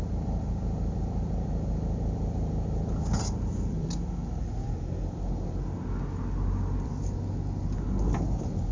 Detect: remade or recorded recorded